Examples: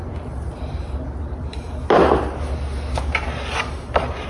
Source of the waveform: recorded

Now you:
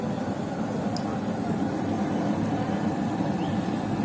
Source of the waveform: recorded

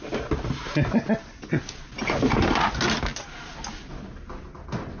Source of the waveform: recorded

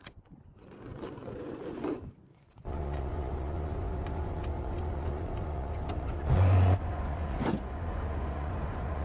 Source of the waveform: remade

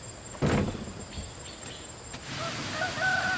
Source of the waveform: recorded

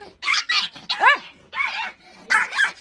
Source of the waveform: recorded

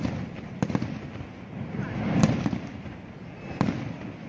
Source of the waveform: recorded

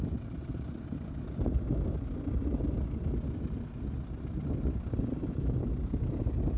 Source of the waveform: recorded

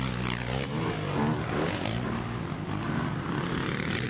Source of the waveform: recorded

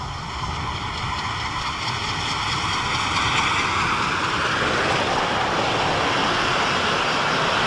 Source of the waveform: recorded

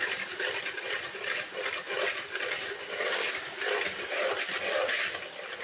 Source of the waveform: recorded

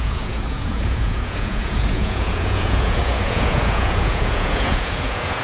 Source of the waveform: remade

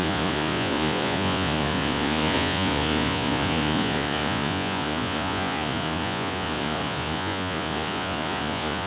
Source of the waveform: remade